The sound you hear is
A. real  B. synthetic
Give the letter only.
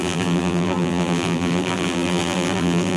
B